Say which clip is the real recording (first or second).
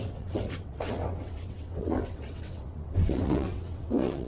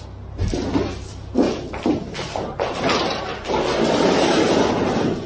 second